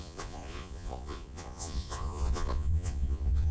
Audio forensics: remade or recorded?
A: remade